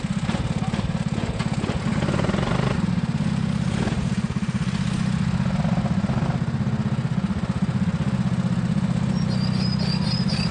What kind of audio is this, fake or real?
real